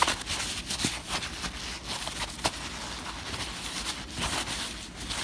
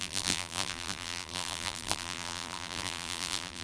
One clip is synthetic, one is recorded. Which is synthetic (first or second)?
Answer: second